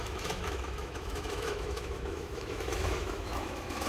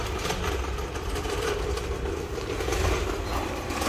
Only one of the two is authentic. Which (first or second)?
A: second